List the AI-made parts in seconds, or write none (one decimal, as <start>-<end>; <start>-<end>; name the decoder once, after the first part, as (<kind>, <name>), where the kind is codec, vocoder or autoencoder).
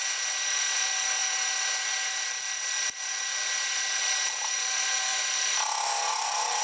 none